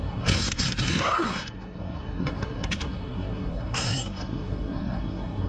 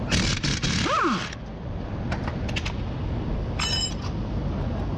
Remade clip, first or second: first